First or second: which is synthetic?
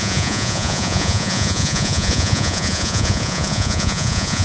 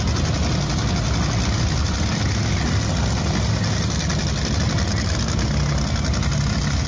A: first